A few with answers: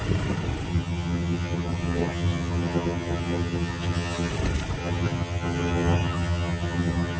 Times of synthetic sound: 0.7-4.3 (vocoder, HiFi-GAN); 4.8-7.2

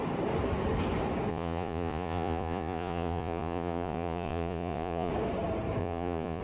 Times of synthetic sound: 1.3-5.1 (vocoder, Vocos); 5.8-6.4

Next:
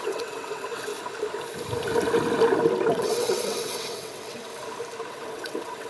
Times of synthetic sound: 0.0-0.9 (vocoder, WaveNeXt); 2.9-4.5; 5.1-5.9

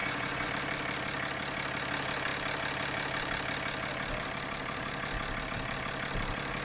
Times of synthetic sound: 0.0-0.5 (vocoder, Vocos)

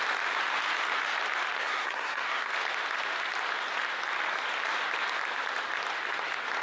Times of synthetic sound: 1.6-2.5 (codec, SNAC)

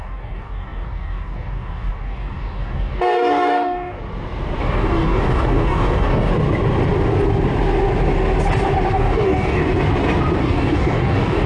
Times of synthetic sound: 0.0-4.0 (codec, DAC); 4.6-6.3; 8.9-9.6; 10.4-11.5